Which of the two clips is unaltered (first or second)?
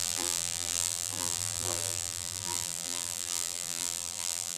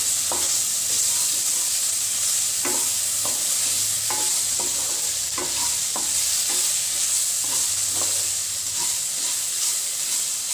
second